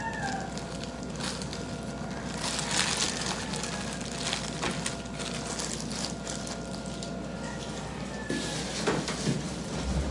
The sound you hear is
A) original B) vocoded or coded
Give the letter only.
A